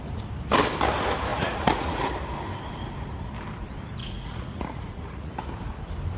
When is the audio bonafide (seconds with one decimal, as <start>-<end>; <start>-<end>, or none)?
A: 0.0-1.3; 2.1-4.0; 5.3-6.2